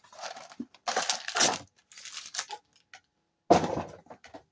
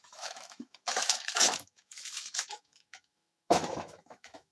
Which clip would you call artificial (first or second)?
second